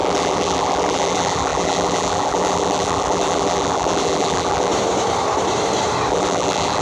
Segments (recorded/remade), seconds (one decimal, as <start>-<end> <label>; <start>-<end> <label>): 0.0-4.7 remade; 4.7-6.1 recorded; 6.1-6.8 remade

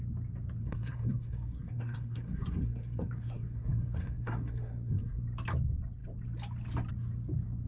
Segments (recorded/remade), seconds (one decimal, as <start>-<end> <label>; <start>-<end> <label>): 0.0-0.6 recorded; 0.6-5.2 remade; 5.2-7.7 recorded

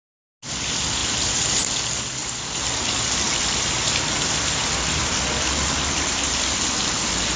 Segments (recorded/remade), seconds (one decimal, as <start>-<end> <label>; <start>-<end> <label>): 0.0-7.4 recorded

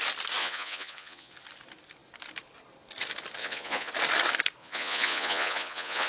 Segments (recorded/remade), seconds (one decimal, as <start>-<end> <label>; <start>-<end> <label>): 0.0-0.4 recorded; 0.4-1.3 remade; 1.3-3.4 recorded; 3.4-3.9 remade; 3.9-4.6 recorded; 4.6-6.1 remade

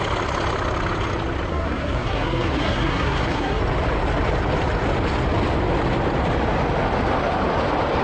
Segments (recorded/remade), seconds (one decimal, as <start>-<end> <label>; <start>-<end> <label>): 0.0-1.5 recorded; 1.5-3.6 remade; 3.6-8.0 recorded